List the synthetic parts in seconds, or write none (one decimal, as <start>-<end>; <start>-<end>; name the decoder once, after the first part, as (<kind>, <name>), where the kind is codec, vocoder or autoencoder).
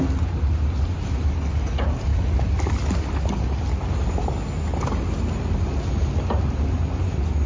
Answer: none